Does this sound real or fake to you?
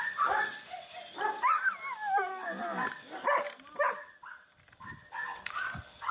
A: real